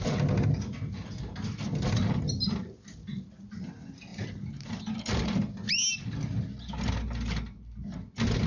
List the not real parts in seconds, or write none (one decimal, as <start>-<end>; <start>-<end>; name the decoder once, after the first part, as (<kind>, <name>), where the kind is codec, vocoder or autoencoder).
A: none